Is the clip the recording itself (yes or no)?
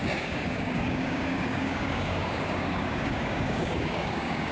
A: no